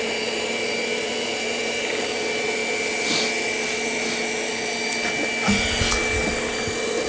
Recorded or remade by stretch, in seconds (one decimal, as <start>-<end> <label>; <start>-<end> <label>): 0.0-2.6 remade; 2.6-6.3 recorded; 6.3-7.1 remade